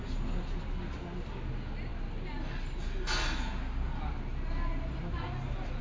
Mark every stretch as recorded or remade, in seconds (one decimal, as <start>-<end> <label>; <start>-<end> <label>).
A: 0.0-5.8 recorded